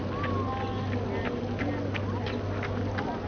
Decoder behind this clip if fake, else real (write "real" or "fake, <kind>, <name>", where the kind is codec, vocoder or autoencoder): real